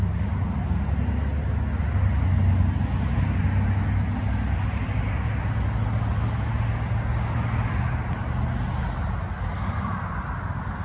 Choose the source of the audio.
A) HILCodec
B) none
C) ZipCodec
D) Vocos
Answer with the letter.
B